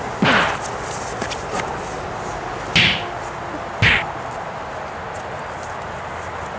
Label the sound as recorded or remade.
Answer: recorded